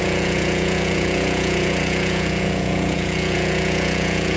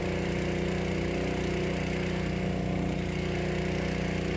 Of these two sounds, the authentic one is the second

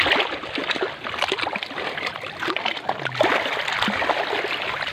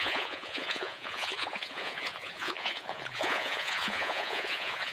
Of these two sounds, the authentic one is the first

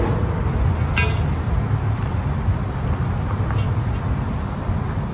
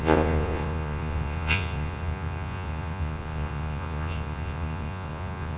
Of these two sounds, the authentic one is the first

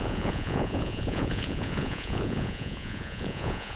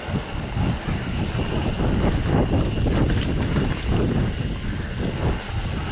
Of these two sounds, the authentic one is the second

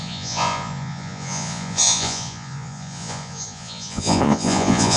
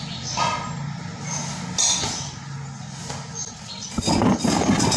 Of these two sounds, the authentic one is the second